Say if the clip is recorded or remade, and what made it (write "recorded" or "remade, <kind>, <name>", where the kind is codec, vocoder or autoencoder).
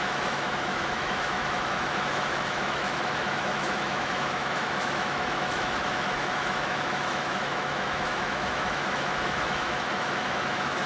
remade, autoencoder, DAC-VAE